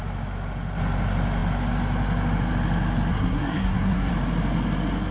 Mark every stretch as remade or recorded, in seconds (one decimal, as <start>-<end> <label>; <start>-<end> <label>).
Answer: 0.0-3.1 recorded; 3.1-4.1 remade; 4.1-5.1 recorded